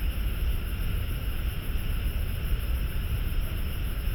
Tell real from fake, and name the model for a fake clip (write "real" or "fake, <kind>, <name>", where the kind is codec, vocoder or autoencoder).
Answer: fake, vocoder, BigVGAN v2